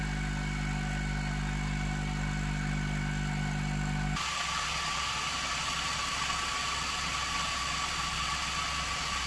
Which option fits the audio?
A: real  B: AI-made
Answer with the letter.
A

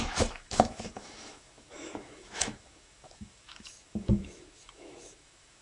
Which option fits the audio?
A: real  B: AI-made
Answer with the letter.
B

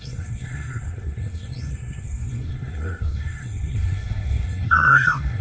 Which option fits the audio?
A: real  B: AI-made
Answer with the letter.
B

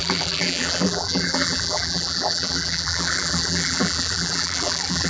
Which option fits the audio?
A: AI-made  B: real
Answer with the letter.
A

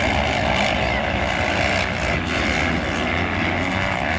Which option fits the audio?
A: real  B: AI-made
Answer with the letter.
A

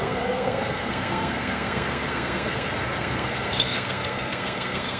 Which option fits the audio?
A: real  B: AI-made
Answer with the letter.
B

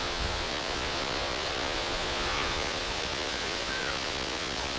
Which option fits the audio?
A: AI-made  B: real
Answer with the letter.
A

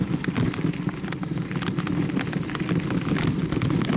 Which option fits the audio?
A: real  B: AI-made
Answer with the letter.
A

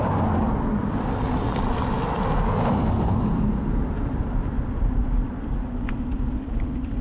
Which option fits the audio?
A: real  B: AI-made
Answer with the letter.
A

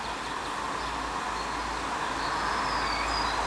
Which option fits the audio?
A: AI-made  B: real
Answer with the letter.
B